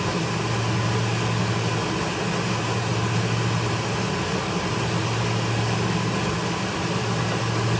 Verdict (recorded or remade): recorded